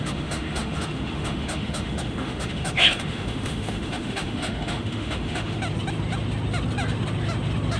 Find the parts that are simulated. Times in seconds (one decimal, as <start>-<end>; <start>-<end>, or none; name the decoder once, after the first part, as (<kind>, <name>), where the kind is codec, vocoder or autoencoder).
0.0-5.6 (autoencoder, DAC-VAE)